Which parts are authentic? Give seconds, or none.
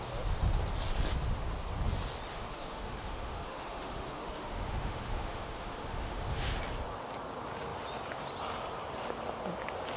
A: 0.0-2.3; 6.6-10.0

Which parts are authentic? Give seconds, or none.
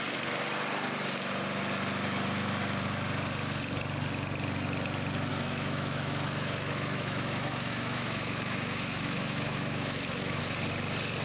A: 0.0-5.3; 10.4-11.2